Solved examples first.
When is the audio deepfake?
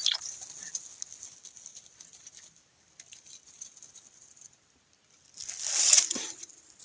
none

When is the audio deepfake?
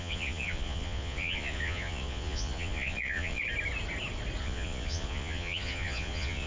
0.0-3.4 (vocoder, Vocos); 4.4-6.5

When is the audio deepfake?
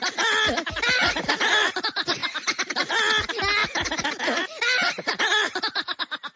none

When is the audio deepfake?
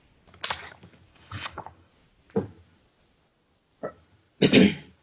1.1-1.9 (codec, HILCodec)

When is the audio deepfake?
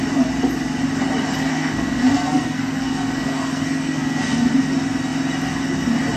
1.5-4.5 (codec, SNAC)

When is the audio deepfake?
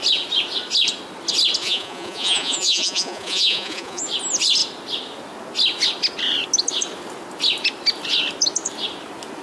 1.6-4.0 (vocoder, Vocos)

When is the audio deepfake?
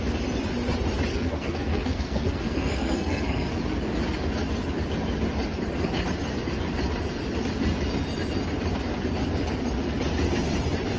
1.1-3.5 (codec, SNAC)